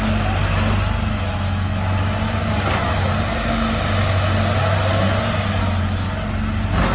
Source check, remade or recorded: recorded